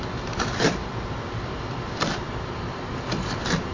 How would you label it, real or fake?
fake